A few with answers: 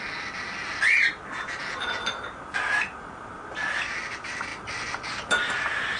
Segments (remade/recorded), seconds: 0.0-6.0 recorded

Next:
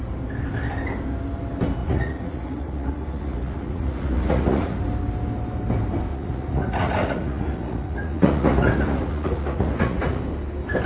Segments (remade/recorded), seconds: 0.0-1.8 recorded; 1.8-4.8 remade; 4.8-6.1 recorded; 6.1-10.2 remade; 10.2-10.9 recorded

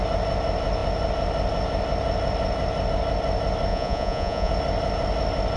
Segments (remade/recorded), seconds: 0.0-3.7 recorded; 3.7-4.5 remade; 4.5-5.6 recorded